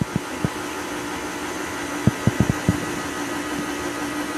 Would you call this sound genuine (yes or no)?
yes